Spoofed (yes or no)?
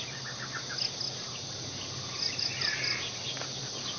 no